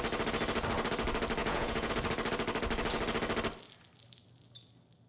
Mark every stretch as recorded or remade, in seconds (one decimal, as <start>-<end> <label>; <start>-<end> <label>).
0.0-1.4 recorded; 1.4-1.9 remade; 1.9-5.1 recorded